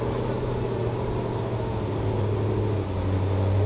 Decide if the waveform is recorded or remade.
recorded